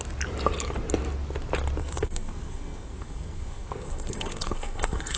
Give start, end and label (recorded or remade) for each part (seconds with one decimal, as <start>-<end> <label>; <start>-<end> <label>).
0.0-1.8 recorded; 1.8-5.2 remade